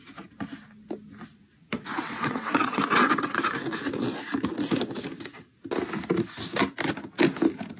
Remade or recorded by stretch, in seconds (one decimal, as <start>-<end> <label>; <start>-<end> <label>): 0.0-2.0 recorded; 2.0-2.8 remade; 2.8-7.8 recorded

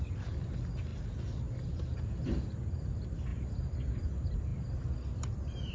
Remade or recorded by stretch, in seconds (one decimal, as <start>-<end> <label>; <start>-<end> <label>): 0.0-5.7 recorded

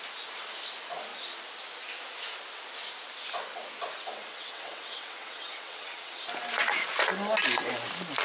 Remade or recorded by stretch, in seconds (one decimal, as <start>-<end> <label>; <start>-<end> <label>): 0.0-4.1 recorded; 4.1-6.2 remade; 6.2-8.2 recorded

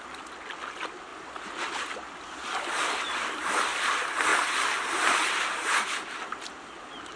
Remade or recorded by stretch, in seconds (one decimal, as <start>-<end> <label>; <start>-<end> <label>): 0.0-7.2 recorded

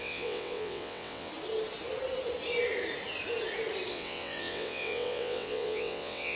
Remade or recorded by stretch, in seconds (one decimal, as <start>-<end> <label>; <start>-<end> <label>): 0.0-1.3 remade; 1.3-3.9 recorded; 3.9-6.4 remade

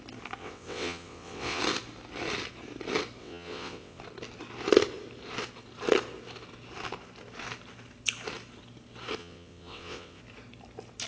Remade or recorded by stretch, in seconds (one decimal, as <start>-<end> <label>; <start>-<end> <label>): 0.0-0.4 recorded; 0.4-1.6 remade; 1.6-3.2 recorded; 3.2-4.0 remade; 4.0-9.2 recorded; 9.2-10.2 remade; 10.2-11.1 recorded